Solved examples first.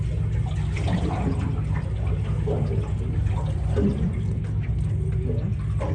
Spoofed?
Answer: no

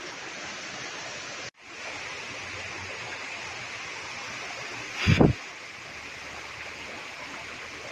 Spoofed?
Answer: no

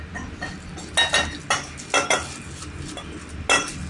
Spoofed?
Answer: no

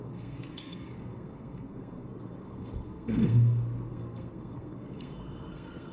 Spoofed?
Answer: yes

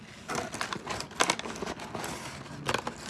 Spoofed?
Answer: no